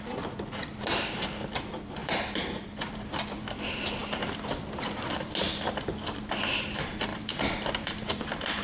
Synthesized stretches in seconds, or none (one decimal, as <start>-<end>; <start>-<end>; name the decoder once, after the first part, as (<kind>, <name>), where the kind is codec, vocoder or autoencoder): 2.0-3.0 (vocoder, BigVGAN v2); 7.1-8.6